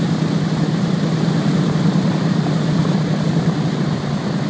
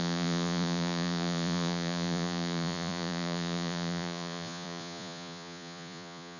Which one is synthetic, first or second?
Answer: second